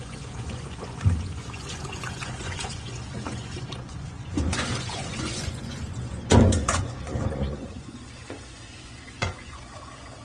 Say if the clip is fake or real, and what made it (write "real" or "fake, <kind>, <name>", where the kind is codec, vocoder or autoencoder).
fake, vocoder, Vocos